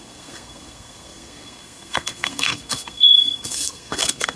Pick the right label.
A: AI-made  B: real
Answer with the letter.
A